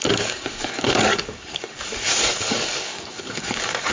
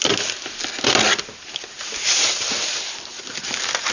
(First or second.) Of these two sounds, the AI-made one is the first